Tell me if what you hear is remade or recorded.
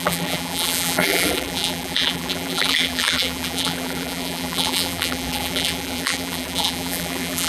remade